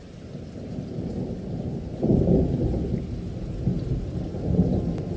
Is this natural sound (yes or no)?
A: yes